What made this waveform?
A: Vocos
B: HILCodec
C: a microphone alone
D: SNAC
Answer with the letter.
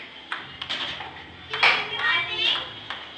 C